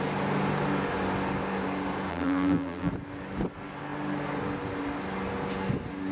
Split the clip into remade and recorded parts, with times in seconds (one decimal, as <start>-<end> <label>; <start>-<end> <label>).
0.0-2.1 recorded; 2.1-2.9 remade; 2.9-6.1 recorded